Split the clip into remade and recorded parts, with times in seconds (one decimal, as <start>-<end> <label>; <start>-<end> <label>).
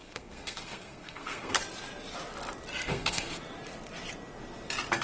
0.0-1.6 remade; 1.6-2.7 recorded; 2.7-3.4 remade; 3.4-5.0 recorded